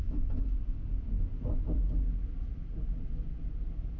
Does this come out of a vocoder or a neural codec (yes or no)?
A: no